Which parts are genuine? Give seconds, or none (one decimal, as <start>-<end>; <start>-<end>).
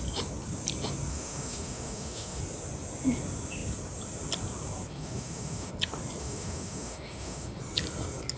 0.0-1.1; 2.4-4.9; 5.7-6.2; 7.6-8.4